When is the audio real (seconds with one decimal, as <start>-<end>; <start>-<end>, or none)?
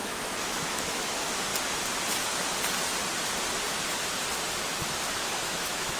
1.5-5.1